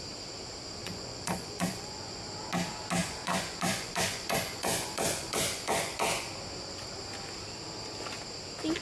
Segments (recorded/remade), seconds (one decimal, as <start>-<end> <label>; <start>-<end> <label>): 0.0-0.8 recorded; 0.8-2.2 remade; 2.2-3.0 recorded; 3.0-6.3 remade; 6.3-8.8 recorded